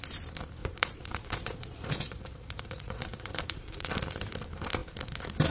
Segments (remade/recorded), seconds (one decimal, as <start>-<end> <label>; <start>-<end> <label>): 0.0-0.6 recorded; 0.6-3.9 remade; 3.9-5.5 recorded